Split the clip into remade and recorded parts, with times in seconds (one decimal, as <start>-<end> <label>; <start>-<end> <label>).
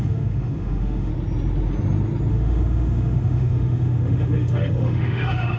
0.0-1.1 remade; 1.1-2.3 recorded; 2.3-5.6 remade